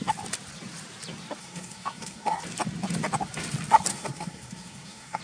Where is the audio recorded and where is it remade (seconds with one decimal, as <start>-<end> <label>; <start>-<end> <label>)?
0.0-1.4 recorded; 1.4-2.4 remade; 2.4-3.9 recorded; 3.9-5.2 remade